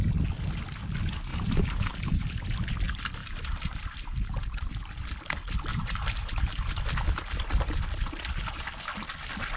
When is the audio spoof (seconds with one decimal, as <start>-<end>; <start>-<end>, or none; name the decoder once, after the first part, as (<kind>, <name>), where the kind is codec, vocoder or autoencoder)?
1.3-2.5 (vocoder, BigVGAN v2); 3.2-4.7; 5.7-6.7